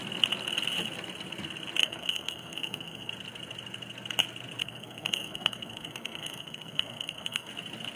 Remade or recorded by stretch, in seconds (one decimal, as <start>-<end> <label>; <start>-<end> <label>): 0.0-1.8 recorded; 1.8-3.1 remade; 3.1-4.6 recorded; 4.6-7.5 remade; 7.5-8.0 recorded